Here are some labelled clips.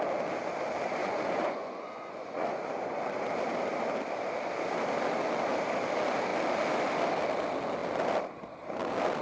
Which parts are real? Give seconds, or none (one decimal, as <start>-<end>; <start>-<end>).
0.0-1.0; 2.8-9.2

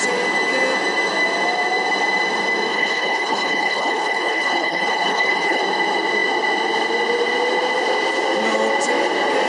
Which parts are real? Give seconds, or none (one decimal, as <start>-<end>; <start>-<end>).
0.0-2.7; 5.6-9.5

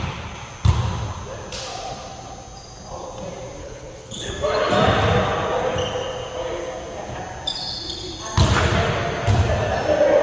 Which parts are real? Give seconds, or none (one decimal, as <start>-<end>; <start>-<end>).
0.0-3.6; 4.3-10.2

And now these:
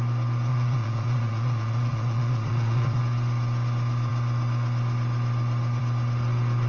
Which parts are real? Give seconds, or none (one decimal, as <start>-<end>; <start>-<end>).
0.0-0.5; 3.0-6.7

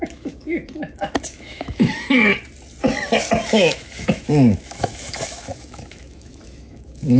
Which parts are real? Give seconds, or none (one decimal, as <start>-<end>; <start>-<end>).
2.3-3.5

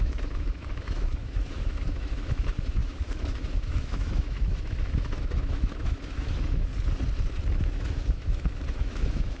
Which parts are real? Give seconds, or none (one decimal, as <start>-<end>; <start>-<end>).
6.7-7.6